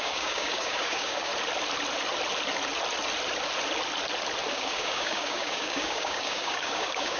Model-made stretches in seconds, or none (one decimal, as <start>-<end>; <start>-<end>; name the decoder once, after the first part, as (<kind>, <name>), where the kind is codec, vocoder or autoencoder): 0.0-1.3 (codec, DAC); 4.5-7.2